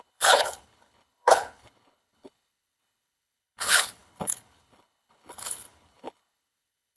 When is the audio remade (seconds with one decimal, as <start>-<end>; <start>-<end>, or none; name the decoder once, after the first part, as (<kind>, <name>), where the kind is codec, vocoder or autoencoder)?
0.0-7.0 (codec, HILCodec)